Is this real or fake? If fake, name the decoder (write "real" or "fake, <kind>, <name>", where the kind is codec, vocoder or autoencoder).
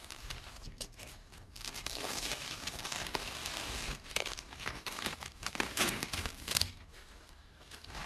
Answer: fake, codec, DAC